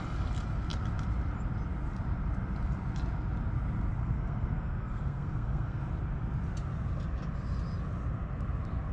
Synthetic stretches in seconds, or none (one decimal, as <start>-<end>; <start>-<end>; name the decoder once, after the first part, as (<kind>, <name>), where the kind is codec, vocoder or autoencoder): 4.0-5.8 (codec, SNAC)